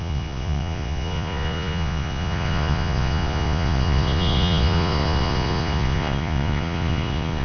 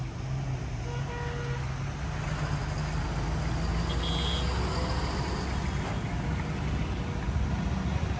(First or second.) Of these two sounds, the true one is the second